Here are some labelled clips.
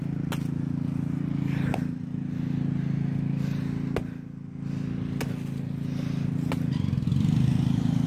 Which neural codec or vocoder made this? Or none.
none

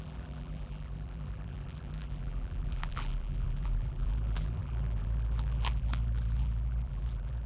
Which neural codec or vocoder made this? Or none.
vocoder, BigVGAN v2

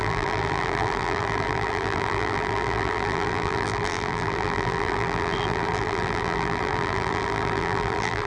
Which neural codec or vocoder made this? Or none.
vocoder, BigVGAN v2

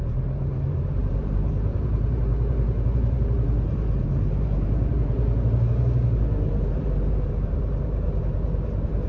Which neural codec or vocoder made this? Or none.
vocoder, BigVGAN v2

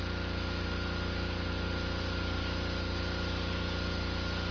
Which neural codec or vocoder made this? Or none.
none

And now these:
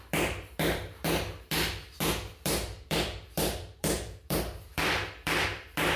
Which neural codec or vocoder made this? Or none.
vocoder, BigVGAN v2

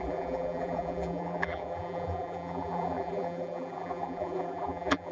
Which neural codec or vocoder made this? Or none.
vocoder, BigVGAN v2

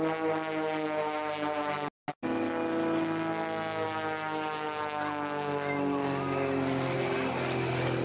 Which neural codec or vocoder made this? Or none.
none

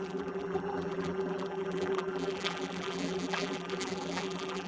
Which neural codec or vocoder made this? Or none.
vocoder, BigVGAN v2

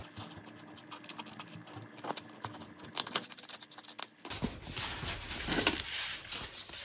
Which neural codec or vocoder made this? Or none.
none